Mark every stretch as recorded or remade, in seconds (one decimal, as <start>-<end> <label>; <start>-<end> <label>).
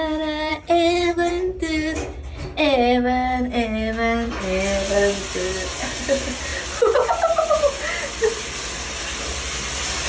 0.0-0.5 recorded; 0.5-1.3 remade; 1.3-10.1 recorded